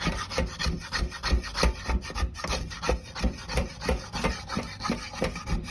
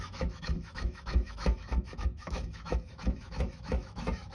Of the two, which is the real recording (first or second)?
first